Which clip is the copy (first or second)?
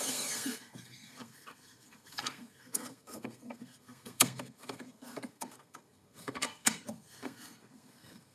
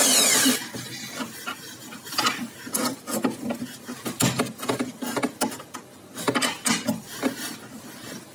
first